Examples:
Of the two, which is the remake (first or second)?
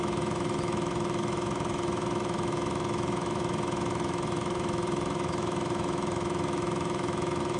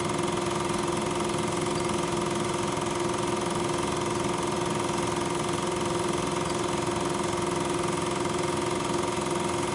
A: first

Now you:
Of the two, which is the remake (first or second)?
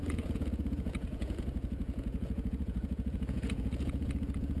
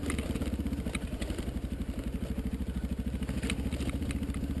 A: first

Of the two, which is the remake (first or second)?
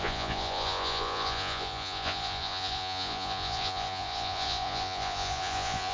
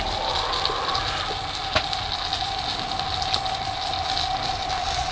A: first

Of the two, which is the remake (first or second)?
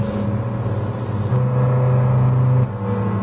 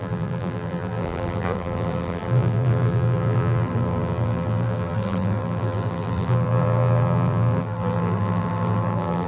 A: second